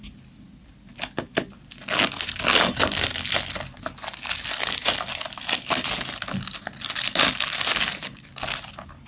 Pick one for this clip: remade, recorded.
recorded